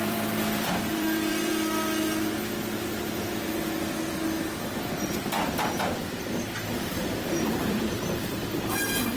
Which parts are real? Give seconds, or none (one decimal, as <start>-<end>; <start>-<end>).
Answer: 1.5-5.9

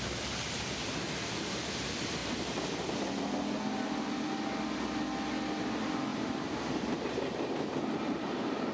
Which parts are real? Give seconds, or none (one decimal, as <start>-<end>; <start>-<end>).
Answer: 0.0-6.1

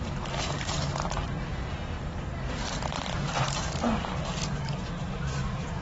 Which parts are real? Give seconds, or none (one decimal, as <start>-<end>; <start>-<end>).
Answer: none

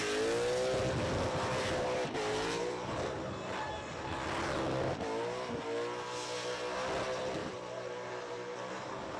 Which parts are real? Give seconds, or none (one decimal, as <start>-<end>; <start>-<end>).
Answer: 0.0-2.3; 2.9-7.4; 8.7-9.2

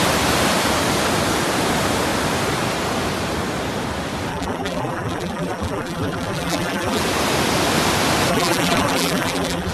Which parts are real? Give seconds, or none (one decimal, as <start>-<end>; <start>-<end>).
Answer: 0.0-4.3; 7.0-8.3